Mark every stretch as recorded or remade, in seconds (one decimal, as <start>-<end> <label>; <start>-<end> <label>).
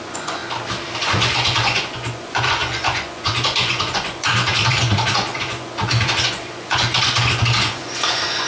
0.0-0.4 remade; 0.4-1.0 recorded; 1.0-8.5 remade